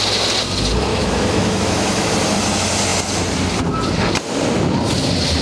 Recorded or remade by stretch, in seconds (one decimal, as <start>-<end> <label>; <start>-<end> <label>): 0.0-0.9 recorded; 0.9-2.1 remade; 2.1-5.4 recorded